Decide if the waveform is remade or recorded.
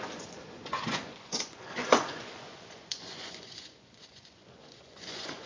remade